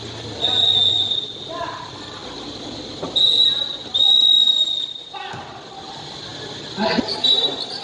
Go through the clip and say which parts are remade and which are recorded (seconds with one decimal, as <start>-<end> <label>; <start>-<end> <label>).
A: 0.0-7.8 recorded

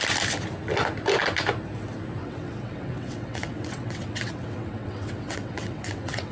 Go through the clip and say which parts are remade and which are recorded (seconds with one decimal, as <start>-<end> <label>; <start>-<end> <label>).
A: 0.0-2.2 recorded; 2.2-6.3 remade

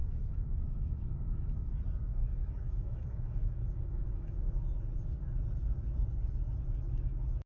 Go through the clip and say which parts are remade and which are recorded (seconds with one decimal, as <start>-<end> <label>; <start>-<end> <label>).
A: 0.0-1.7 remade; 1.7-2.1 recorded; 2.1-4.6 remade; 4.6-7.5 recorded